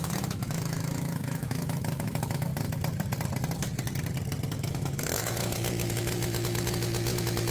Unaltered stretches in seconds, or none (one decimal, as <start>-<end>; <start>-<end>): 2.5-4.5